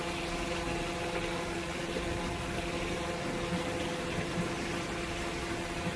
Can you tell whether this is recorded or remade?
recorded